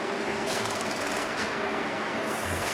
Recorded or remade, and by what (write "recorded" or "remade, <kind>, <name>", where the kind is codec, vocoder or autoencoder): remade, codec, SNAC